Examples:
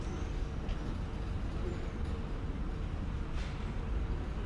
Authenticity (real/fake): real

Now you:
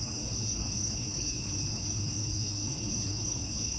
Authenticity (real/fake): fake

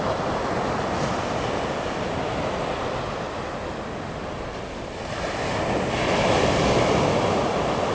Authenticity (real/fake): real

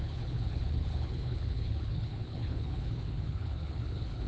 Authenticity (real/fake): fake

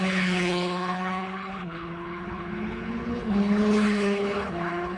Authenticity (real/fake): fake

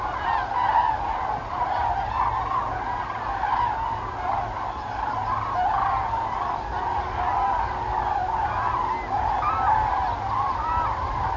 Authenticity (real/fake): real